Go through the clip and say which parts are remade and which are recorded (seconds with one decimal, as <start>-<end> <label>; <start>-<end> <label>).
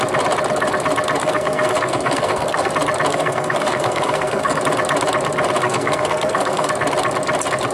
0.0-1.2 recorded; 1.2-2.7 remade; 2.7-3.1 recorded; 3.1-4.6 remade; 4.6-5.6 recorded; 5.6-6.7 remade; 6.7-7.7 recorded